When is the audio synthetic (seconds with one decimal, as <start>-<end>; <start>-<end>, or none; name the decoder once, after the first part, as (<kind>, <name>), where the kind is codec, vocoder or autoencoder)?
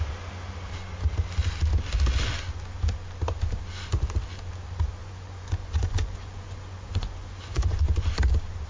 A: 5.0-7.8 (vocoder, Vocos)